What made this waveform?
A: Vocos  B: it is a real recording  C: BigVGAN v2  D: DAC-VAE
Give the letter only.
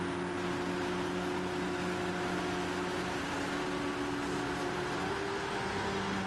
B